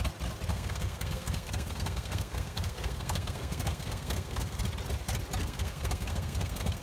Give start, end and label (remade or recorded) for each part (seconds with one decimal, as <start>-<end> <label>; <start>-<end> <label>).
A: 0.0-0.5 recorded; 0.5-4.6 remade; 4.6-5.4 recorded; 5.4-6.8 remade